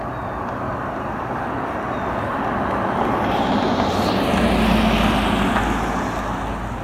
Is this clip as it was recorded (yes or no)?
yes